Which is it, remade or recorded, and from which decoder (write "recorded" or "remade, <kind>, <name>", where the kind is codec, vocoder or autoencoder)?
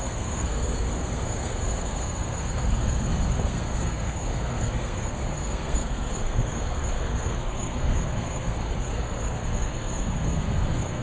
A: remade, codec, SNAC